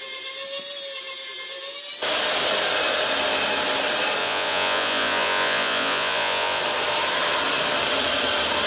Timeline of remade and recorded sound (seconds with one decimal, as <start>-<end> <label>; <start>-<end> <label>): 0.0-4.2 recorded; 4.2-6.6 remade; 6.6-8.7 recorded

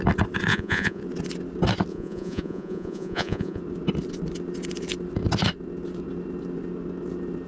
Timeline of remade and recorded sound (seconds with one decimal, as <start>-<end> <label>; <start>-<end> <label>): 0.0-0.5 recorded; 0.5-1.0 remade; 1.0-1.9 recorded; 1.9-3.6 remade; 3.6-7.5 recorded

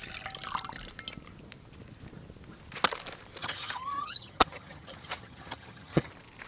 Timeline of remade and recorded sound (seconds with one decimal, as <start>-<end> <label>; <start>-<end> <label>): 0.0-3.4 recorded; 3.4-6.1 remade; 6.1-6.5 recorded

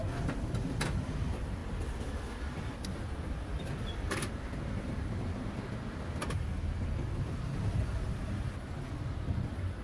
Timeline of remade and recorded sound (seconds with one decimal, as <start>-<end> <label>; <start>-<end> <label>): 0.0-9.8 recorded

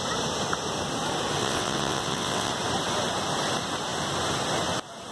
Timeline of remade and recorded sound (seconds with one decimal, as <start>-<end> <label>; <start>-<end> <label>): 0.0-1.4 recorded; 1.4-2.5 remade; 2.5-5.1 recorded

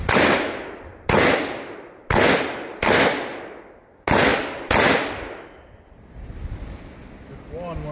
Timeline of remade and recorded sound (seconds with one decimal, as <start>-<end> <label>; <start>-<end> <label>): 0.0-7.9 recorded

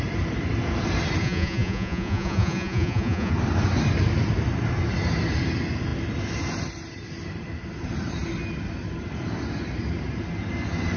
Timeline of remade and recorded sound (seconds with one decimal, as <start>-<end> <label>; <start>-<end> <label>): 0.0-1.2 recorded; 1.2-3.3 remade; 3.3-11.0 recorded

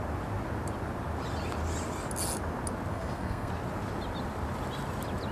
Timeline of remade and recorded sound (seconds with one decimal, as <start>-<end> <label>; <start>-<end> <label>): 0.0-2.9 recorded; 2.9-3.5 remade; 3.5-5.3 recorded